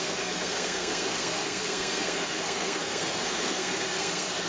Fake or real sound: fake